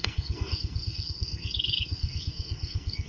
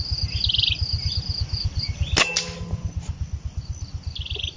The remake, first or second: first